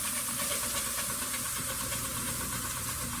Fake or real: real